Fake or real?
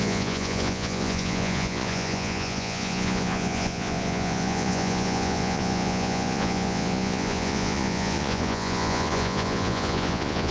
fake